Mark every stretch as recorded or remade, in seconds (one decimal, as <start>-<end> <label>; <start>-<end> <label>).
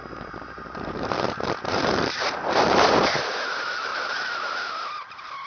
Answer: 0.0-5.5 remade